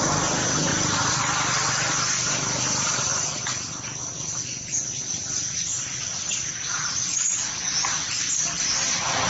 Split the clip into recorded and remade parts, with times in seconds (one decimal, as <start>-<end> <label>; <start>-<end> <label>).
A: 0.0-9.3 recorded